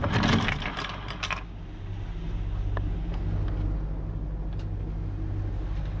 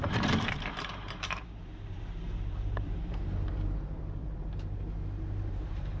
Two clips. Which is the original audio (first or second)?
first